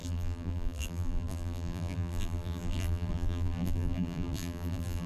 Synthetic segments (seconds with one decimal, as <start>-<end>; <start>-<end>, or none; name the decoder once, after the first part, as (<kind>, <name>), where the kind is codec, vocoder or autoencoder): 0.0-5.1 (vocoder, BigVGAN v2)